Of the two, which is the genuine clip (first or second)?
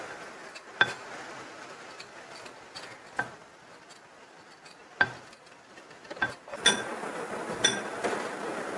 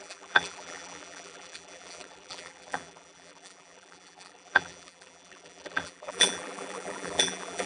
first